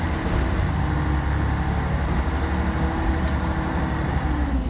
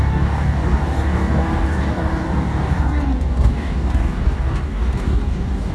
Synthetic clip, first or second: second